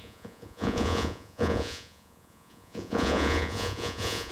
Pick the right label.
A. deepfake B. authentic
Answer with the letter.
A